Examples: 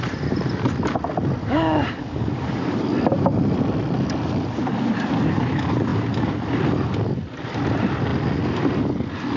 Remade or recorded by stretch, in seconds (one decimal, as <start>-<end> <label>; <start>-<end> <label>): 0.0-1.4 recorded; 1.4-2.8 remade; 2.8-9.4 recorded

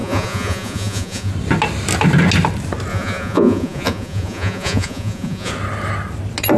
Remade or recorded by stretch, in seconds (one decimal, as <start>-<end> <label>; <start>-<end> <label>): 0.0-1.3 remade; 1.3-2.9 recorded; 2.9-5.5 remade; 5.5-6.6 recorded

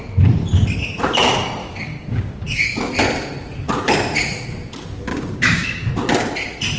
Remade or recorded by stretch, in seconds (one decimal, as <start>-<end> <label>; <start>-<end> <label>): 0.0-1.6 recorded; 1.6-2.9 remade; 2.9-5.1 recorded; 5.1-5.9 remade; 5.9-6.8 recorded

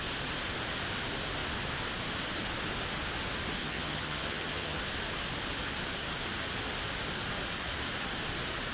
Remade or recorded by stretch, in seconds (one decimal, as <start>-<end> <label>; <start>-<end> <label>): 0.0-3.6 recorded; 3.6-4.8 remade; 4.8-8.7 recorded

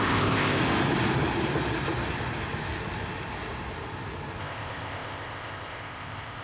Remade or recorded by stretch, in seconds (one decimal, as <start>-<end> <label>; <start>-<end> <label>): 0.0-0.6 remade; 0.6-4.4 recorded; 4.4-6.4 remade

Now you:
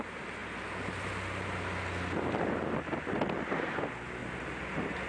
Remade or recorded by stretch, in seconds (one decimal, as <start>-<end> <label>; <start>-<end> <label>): 0.0-5.1 recorded

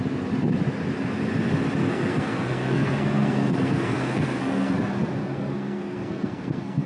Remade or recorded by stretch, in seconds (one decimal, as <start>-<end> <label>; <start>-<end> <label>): 0.0-1.8 recorded; 1.8-4.7 remade; 4.7-5.2 recorded; 5.2-6.9 remade

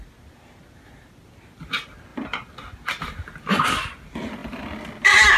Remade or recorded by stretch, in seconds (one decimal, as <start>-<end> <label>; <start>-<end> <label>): 0.0-5.4 recorded